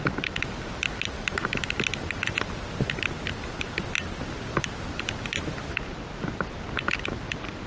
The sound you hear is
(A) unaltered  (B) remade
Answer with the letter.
A